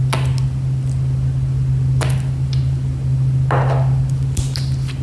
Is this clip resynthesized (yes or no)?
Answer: no